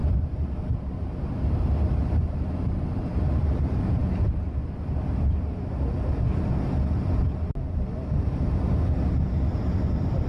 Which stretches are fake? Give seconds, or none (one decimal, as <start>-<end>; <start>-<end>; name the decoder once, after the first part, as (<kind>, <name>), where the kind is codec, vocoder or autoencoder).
0.0-4.1 (vocoder, BigVGAN v2)